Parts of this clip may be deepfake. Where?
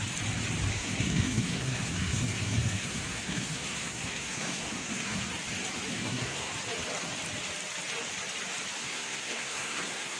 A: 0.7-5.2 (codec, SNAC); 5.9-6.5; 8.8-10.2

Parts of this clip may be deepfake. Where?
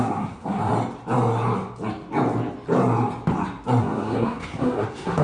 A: 0.0-0.7 (codec, SNAC); 3.8-5.2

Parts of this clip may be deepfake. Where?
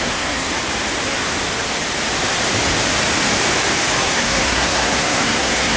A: 0.0-0.5 (codec, SNAC); 4.0-5.8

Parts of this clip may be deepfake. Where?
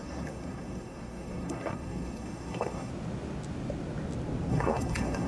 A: 0.0-2.9 (codec, SNAC); 4.5-5.3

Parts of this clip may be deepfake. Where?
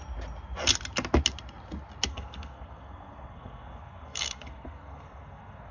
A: 2.1-5.7 (codec, SNAC)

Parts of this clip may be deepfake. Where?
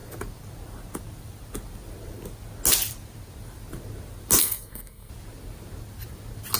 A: 4.4-5.1 (codec, SNAC)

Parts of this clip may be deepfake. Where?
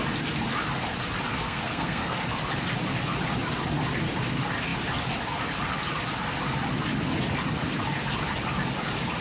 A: 1.4-2.2 (codec, SNAC)